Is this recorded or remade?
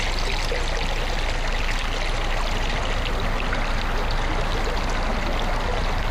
recorded